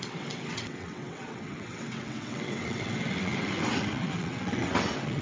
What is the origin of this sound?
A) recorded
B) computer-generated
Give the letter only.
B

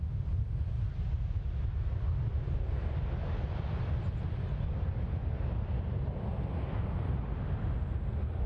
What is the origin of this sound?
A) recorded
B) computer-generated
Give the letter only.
A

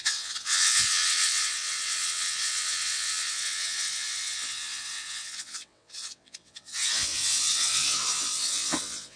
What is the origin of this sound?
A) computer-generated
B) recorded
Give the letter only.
A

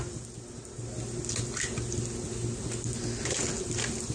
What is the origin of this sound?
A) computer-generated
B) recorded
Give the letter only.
B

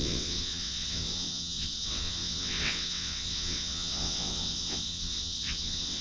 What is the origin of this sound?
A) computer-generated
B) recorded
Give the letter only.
A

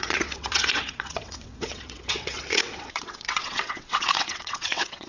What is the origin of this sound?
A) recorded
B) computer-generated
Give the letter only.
B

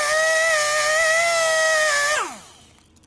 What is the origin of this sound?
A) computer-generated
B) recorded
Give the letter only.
B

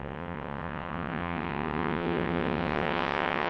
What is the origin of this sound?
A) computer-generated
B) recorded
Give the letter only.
A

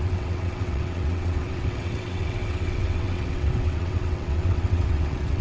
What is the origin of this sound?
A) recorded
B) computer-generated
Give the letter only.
B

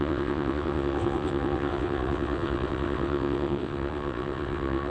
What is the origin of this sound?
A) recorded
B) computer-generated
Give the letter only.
B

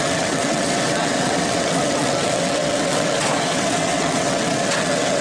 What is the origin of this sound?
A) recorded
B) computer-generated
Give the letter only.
B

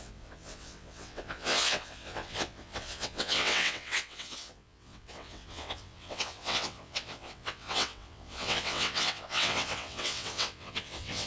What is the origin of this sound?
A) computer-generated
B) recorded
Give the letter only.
A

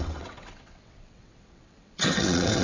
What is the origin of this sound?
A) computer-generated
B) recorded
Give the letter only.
A